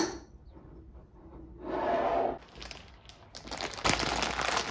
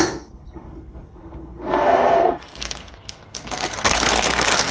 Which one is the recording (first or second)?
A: first